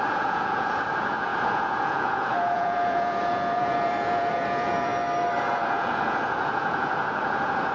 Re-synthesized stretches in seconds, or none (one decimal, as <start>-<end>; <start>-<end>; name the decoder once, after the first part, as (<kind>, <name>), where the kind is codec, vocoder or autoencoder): 0.0-4.9 (vocoder, Vocos); 5.4-7.7